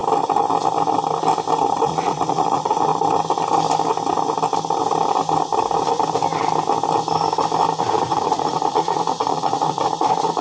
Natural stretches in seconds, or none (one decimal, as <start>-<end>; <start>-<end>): 0.0-1.8; 2.9-7.8